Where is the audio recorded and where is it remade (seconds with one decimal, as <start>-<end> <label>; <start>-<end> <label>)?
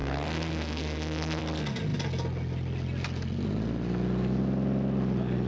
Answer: 0.0-1.4 remade; 1.4-5.5 recorded